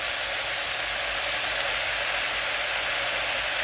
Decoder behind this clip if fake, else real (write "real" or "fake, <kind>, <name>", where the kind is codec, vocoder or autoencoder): real